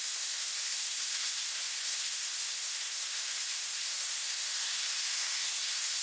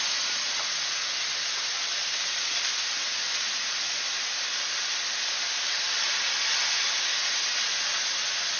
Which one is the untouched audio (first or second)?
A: second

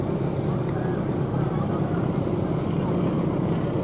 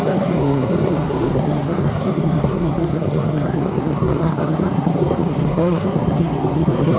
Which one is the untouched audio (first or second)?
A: first